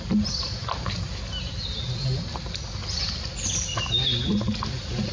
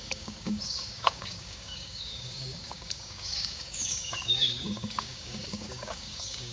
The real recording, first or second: first